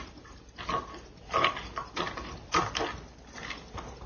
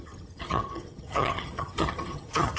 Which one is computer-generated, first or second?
second